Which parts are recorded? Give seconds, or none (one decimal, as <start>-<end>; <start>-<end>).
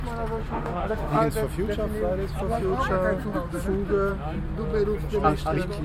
0.0-0.4; 1.2-5.8